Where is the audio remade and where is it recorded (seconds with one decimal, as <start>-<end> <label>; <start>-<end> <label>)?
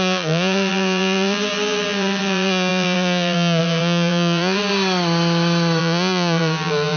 0.0-4.7 remade; 4.7-5.8 recorded; 5.8-7.0 remade